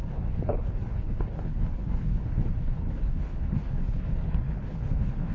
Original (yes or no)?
no